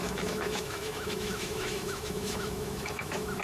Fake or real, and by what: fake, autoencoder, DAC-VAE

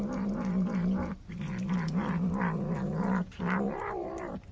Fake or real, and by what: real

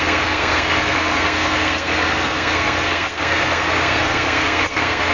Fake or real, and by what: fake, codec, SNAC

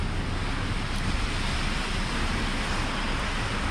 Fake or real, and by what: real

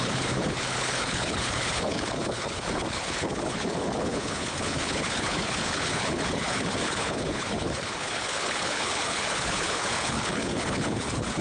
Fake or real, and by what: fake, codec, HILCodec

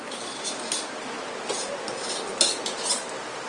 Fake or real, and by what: real